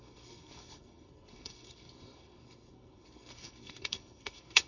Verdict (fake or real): fake